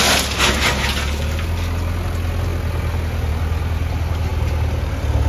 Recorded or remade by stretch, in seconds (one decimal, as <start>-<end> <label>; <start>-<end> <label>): 0.0-5.3 recorded